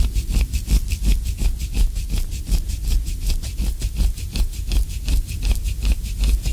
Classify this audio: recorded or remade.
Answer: recorded